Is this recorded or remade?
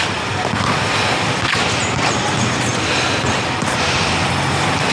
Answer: recorded